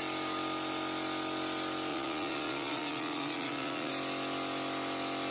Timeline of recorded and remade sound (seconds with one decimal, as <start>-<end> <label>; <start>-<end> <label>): 0.0-1.9 recorded; 1.9-3.9 remade; 3.9-5.3 recorded